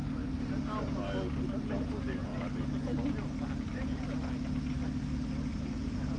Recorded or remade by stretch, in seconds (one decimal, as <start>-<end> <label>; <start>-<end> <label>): 0.0-6.2 recorded

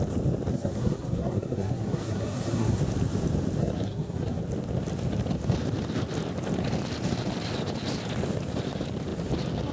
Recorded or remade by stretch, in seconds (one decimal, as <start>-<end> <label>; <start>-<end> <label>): 0.0-0.5 recorded; 0.5-2.8 remade; 2.8-3.6 recorded; 3.6-4.4 remade; 4.4-9.7 recorded

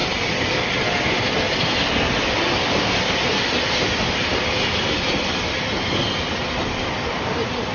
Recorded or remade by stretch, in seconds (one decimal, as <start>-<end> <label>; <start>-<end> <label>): 0.0-7.7 recorded

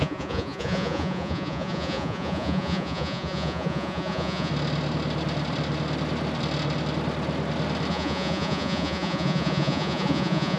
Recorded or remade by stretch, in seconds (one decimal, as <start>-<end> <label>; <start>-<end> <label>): 0.0-4.5 remade; 4.5-7.9 recorded; 7.9-10.6 remade

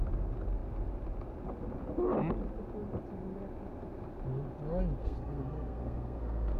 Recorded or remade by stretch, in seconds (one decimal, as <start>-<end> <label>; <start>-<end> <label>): 0.0-5.0 recorded; 5.0-6.6 remade

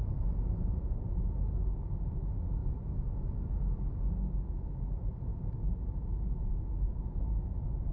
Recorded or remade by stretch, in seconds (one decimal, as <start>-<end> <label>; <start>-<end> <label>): 0.0-7.9 recorded

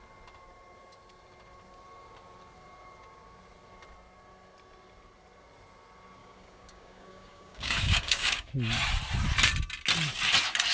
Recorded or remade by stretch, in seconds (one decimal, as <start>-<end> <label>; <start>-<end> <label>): 0.0-6.2 recorded; 6.2-8.5 remade; 8.5-10.7 recorded